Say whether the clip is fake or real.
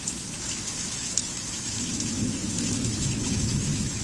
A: fake